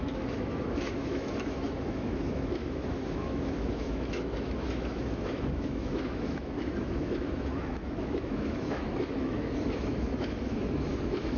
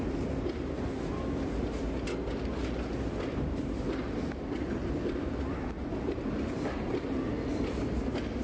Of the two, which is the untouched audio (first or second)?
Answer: second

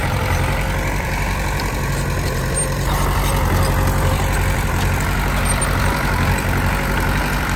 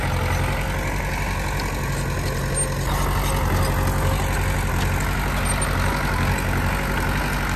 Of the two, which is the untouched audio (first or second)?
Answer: second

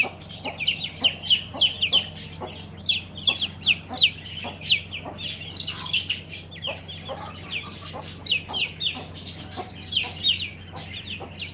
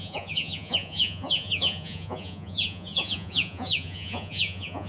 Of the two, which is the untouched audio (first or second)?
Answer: first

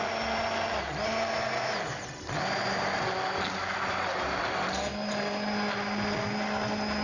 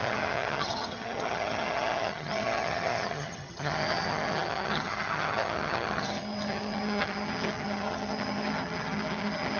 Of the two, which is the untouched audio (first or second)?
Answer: first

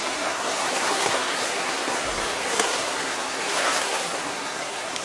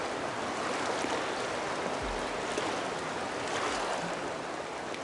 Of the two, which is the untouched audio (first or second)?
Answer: second